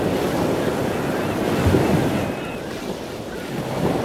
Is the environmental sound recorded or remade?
recorded